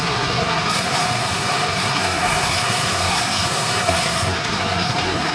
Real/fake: fake